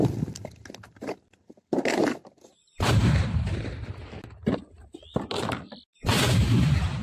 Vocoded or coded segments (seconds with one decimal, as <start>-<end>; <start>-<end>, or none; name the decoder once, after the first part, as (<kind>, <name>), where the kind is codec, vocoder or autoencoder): 2.6-3.7 (vocoder, BigVGAN v2)